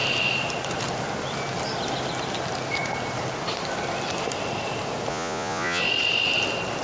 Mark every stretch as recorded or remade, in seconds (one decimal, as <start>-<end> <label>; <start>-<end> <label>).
0.0-5.1 recorded; 5.1-5.8 remade; 5.8-6.8 recorded